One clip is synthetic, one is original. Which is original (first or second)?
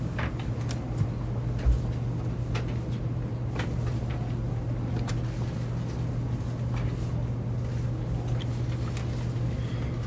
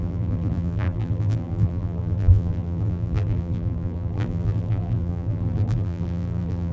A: first